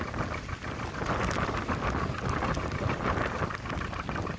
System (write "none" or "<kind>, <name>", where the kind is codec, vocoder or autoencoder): none